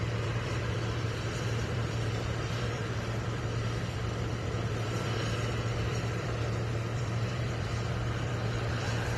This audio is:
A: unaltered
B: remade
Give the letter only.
B